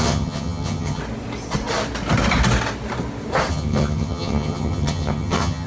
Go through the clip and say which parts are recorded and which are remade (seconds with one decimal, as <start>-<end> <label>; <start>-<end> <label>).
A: 0.0-1.0 remade; 1.0-3.5 recorded; 3.5-5.7 remade